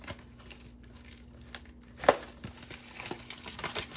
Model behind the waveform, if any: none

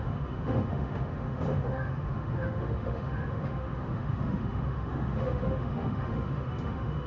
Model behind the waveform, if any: autoencoder, DAC-VAE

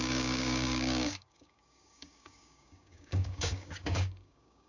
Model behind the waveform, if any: codec, DAC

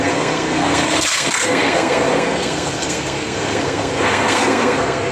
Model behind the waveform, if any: codec, SNAC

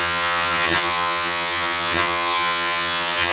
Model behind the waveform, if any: vocoder, HiFi-GAN